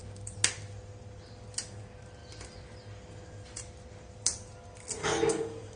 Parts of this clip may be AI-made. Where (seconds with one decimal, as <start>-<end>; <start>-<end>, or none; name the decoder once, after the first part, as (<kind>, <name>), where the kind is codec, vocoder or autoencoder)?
5.0-5.8 (codec, DAC)